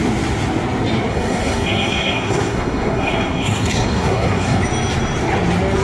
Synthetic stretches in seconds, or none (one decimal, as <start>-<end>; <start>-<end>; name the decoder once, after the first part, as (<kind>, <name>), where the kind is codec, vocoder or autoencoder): 1.1-4.6 (codec, SNAC)